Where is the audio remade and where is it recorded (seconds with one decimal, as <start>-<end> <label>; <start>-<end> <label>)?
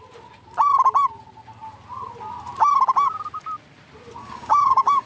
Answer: 0.0-4.2 recorded; 4.2-5.1 remade